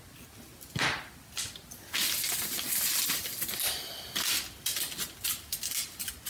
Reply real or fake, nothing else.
real